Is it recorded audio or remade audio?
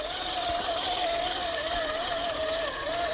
remade